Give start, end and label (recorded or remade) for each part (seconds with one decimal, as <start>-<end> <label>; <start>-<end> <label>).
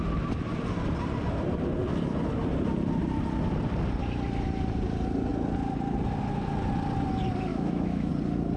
0.0-7.5 recorded; 7.5-8.1 remade; 8.1-8.6 recorded